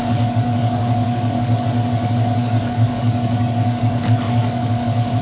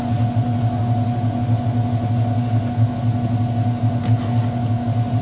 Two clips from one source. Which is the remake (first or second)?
first